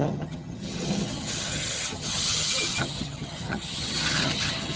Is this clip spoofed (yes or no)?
yes